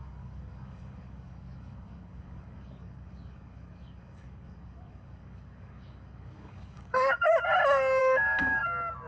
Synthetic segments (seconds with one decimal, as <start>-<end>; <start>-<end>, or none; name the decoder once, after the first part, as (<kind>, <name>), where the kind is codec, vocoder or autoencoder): 0.0-7.3 (codec, DAC); 8.0-8.6